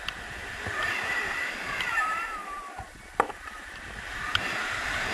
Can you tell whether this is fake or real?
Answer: real